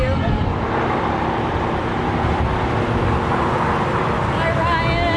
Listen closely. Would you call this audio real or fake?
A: real